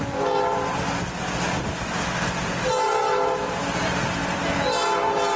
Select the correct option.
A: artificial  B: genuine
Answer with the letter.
B